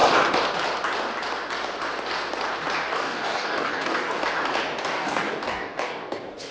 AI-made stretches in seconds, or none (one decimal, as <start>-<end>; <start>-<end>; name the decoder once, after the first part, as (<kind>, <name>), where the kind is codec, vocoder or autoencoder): 2.9-4.2 (codec, DAC); 4.8-6.5